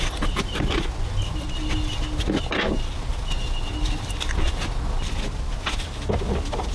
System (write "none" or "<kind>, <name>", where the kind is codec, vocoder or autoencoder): none